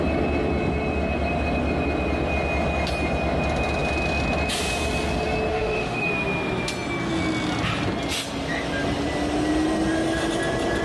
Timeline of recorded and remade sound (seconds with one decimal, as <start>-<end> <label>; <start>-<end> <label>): 0.0-5.5 recorded; 5.5-6.1 remade; 6.1-10.8 recorded